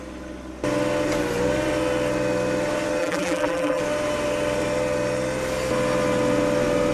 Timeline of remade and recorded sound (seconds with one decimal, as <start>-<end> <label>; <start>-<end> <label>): 0.0-3.0 recorded; 3.0-3.8 remade; 3.8-6.9 recorded